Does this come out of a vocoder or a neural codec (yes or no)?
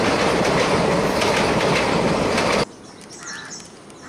no